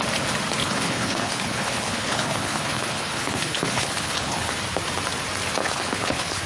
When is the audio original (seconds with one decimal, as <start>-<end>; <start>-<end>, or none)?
0.0-0.6; 4.5-5.6

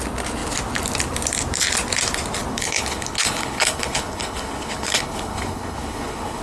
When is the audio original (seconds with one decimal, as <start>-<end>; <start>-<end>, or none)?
0.0-2.5

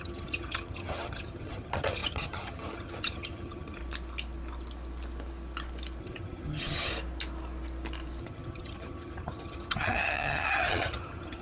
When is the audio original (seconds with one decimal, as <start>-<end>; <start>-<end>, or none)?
3.8-6.0; 6.9-8.2

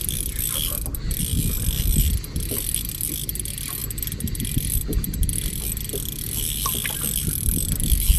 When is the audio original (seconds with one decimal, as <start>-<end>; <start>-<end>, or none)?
0.0-8.2